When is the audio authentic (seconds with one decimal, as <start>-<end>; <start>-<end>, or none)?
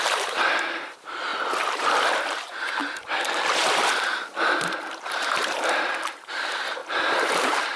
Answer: 1.3-1.8; 2.8-6.3; 6.8-7.3